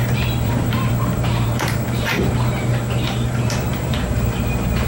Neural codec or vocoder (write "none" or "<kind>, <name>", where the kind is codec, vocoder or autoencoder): vocoder, BigVGAN v2